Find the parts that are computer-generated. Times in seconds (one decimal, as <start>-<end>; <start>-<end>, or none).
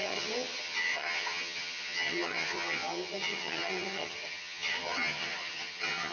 0.0-6.1